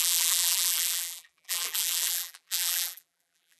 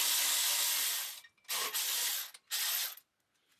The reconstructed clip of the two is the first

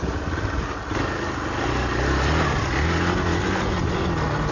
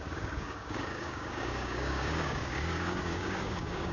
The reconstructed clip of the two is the second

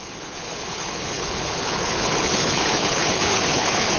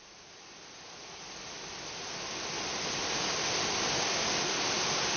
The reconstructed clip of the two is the first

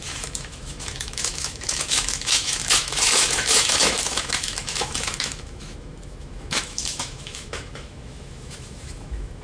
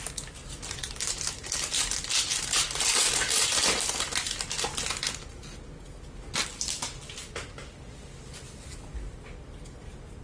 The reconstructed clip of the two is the first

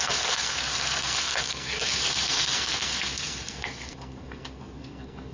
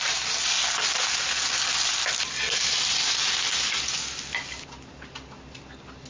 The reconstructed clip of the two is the first